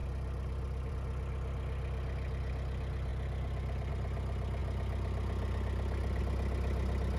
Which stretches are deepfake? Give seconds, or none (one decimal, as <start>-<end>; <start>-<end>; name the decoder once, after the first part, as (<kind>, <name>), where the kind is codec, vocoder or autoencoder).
0.0-0.9 (vocoder, BigVGAN v2); 3.1-3.9